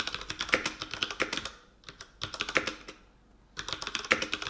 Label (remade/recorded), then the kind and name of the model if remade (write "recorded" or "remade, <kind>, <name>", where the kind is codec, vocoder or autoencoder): recorded